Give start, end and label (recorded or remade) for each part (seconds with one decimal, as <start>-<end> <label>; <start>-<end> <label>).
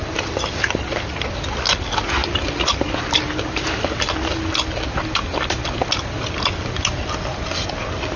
0.0-8.2 recorded